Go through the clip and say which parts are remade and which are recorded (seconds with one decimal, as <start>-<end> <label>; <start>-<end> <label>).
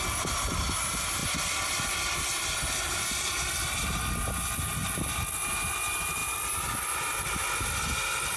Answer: 0.0-8.4 recorded